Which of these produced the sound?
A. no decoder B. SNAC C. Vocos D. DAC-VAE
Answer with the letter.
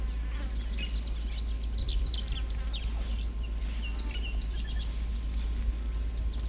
A